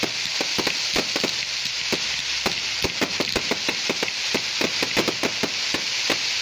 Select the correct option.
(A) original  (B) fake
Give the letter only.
A